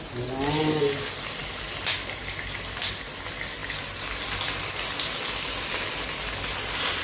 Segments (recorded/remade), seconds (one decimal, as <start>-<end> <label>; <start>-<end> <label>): 0.0-7.0 recorded